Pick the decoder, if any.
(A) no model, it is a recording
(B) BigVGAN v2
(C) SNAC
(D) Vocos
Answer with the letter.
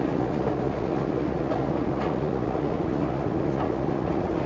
D